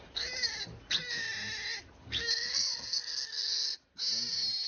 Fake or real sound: real